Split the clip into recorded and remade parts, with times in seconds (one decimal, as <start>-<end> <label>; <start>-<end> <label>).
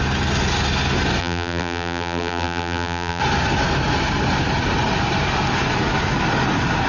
0.0-1.2 recorded; 1.2-3.2 remade; 3.2-6.9 recorded